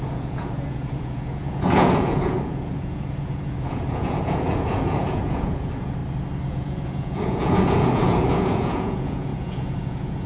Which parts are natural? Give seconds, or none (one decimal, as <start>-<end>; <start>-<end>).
6.0-6.5